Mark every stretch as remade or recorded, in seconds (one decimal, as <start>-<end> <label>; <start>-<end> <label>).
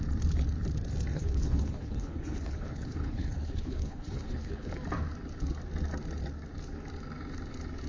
0.0-1.1 recorded; 1.1-4.7 remade; 4.7-7.9 recorded